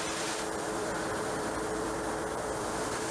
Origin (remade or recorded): remade